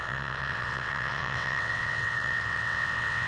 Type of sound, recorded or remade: remade